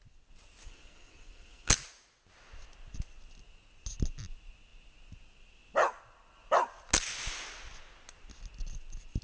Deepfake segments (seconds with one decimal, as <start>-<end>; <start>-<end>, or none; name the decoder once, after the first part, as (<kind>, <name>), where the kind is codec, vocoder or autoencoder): 0.6-1.7 (codec, SNAC)